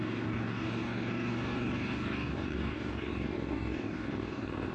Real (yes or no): no